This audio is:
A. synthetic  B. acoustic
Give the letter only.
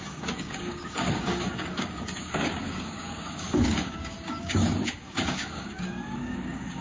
A